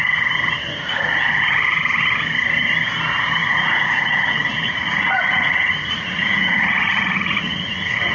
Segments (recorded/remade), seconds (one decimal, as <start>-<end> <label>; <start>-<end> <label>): 0.0-0.8 recorded; 0.8-1.8 remade; 1.8-3.4 recorded; 3.4-8.1 remade

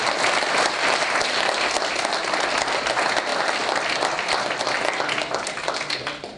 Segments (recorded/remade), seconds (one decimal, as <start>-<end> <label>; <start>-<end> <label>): 0.0-6.4 recorded

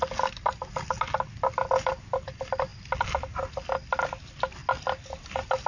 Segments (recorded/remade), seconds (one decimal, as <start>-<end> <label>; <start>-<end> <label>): 0.0-5.7 recorded

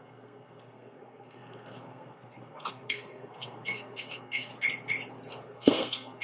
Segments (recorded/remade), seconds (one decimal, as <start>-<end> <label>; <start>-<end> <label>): 0.0-4.5 remade; 4.5-5.3 recorded; 5.3-6.2 remade

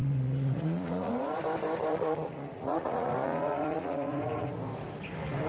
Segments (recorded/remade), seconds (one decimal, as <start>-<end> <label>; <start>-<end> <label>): 0.0-1.4 remade; 1.4-1.9 recorded; 1.9-4.5 remade; 4.5-5.5 recorded